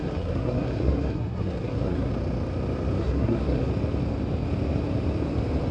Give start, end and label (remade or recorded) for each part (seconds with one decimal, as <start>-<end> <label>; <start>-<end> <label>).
0.0-2.1 remade; 2.1-3.0 recorded; 3.0-3.7 remade; 3.7-5.7 recorded